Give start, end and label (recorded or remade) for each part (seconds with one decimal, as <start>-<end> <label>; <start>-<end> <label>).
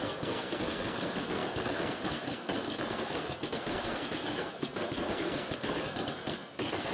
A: 0.0-6.9 remade